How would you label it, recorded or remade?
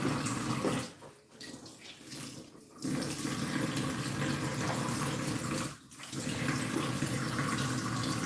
recorded